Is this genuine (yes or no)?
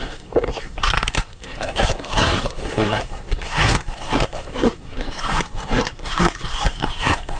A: no